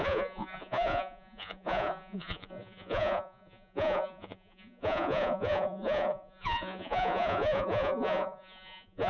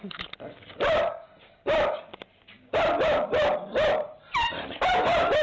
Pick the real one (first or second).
second